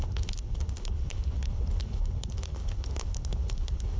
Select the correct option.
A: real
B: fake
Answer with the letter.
B